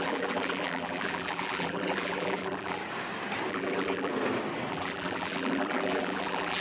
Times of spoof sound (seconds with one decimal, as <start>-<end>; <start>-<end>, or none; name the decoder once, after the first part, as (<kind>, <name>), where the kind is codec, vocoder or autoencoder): 0.0-2.8 (vocoder, BigVGAN v2); 3.5-4.1; 4.7-6.6